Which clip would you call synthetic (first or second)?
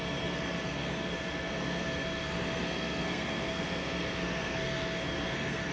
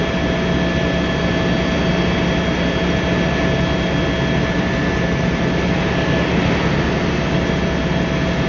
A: first